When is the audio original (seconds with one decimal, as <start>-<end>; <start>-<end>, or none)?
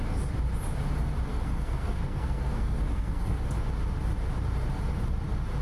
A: 0.0-1.3; 3.4-5.6